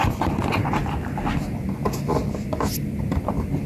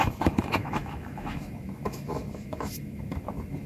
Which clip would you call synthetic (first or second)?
second